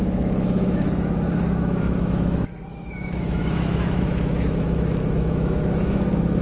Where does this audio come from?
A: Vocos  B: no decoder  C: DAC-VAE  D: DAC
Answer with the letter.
C